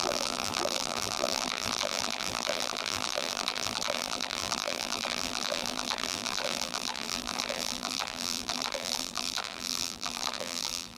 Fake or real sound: fake